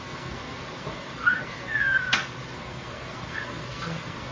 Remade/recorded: remade